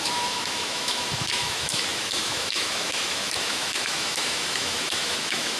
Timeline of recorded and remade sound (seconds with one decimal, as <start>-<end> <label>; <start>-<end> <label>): 0.0-5.6 remade